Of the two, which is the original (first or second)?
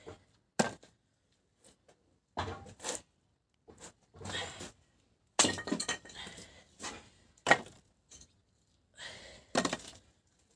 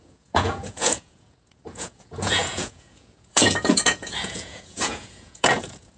first